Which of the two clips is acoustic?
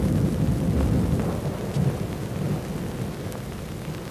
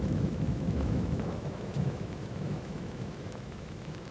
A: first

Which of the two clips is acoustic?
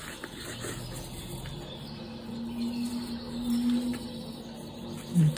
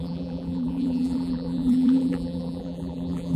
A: first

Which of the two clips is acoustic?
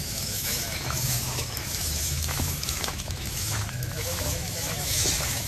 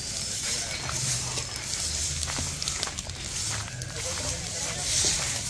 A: second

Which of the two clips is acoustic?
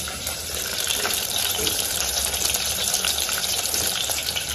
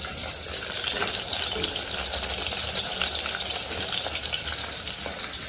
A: second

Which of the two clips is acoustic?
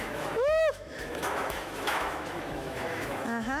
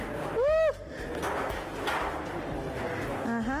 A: second